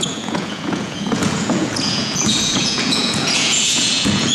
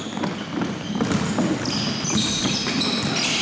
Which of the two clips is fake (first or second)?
first